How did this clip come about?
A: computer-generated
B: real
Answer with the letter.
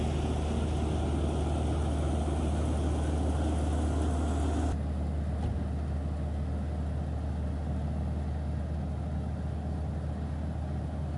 B